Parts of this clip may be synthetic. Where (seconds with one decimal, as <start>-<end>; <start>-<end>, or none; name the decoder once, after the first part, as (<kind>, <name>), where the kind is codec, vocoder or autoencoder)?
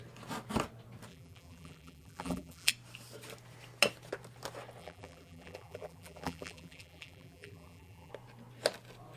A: 1.1-2.7 (vocoder, BigVGAN v2); 4.8-8.1